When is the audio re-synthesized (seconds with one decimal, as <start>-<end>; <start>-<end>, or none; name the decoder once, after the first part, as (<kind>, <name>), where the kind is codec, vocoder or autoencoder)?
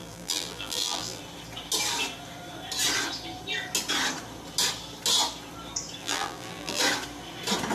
0.0-1.2 (vocoder, BigVGAN v2); 6.0-6.8